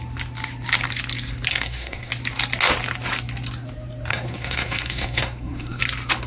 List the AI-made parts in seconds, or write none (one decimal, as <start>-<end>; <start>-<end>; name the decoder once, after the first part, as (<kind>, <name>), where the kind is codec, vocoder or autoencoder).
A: 1.5-2.1 (codec, SNAC); 4.1-5.8